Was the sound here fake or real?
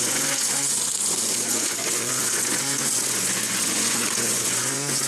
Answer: fake